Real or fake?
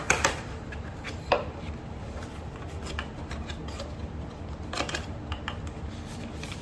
fake